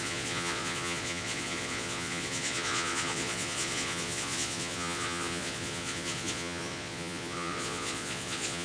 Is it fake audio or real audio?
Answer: fake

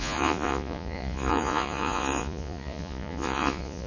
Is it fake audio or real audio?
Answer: fake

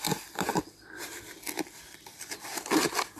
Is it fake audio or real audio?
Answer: real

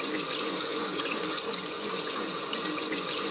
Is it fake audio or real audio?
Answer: fake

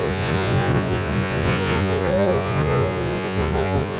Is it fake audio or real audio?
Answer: fake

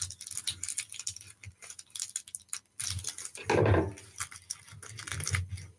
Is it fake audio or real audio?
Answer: real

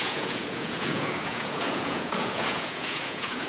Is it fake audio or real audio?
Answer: fake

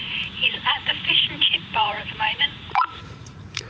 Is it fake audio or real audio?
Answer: fake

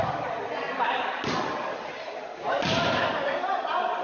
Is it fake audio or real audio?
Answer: real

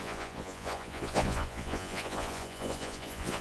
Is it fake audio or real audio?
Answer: fake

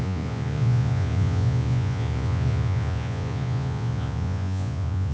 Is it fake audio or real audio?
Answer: fake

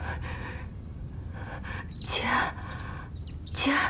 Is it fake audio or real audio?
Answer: real